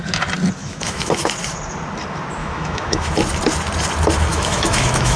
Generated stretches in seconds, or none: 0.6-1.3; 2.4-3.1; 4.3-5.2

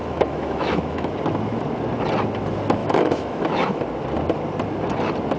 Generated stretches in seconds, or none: 0.0-1.1; 2.8-3.8

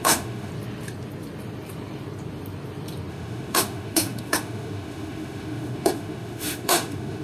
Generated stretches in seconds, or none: 0.0-0.5; 3.1-7.2

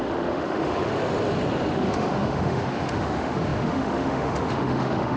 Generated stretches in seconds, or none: 0.0-0.9; 1.7-5.2

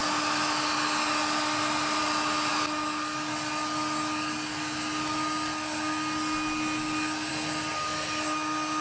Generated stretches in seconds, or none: none

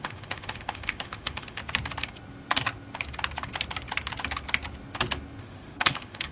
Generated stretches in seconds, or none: 0.0-1.6; 5.4-6.3

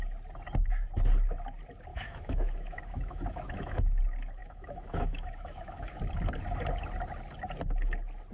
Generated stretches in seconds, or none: 1.9-4.0; 4.4-6.0